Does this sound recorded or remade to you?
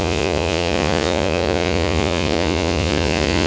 remade